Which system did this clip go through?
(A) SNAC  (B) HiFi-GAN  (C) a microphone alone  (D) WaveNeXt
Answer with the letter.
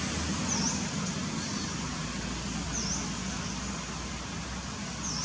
C